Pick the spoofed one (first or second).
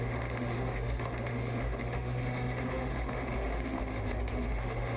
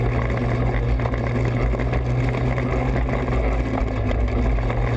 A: first